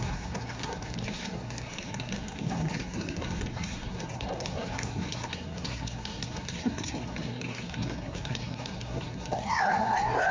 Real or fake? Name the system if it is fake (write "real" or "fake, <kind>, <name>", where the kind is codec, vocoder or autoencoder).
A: fake, codec, SNAC